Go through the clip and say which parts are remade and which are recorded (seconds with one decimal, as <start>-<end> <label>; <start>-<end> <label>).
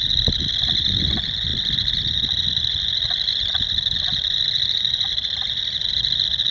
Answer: 0.0-6.5 recorded